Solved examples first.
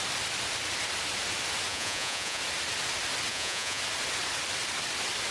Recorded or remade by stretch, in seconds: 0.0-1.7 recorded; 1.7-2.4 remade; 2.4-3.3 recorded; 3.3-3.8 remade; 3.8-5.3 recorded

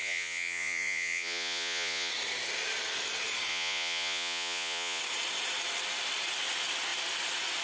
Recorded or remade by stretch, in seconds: 0.0-2.1 remade; 2.1-3.5 recorded; 3.5-5.0 remade; 5.0-7.6 recorded